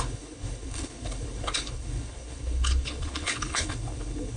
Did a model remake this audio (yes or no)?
yes